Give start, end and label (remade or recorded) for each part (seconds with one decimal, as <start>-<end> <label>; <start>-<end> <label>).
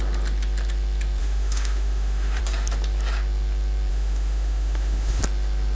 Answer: 0.0-1.2 recorded; 1.2-2.4 remade; 2.4-3.9 recorded; 3.9-5.2 remade; 5.2-5.7 recorded